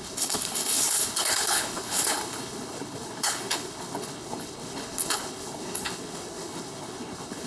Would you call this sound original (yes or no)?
no